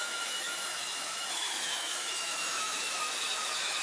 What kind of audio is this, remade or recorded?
remade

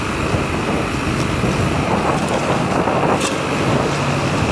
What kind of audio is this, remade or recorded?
recorded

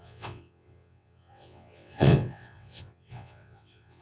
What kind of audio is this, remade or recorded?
remade